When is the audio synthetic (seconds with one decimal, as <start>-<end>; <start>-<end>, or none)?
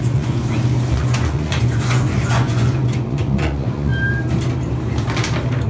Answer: 0.0-0.4; 0.9-3.9